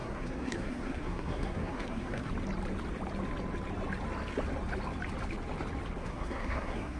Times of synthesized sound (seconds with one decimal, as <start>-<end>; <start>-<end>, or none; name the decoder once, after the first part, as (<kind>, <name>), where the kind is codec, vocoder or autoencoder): 0.0-2.3 (codec, SNAC); 6.0-7.0